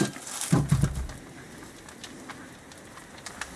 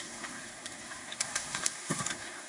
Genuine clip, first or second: first